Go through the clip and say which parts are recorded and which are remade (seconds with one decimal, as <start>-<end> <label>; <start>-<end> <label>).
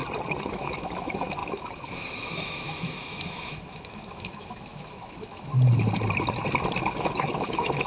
0.0-0.5 recorded; 0.5-5.5 remade; 5.5-7.0 recorded; 7.0-7.9 remade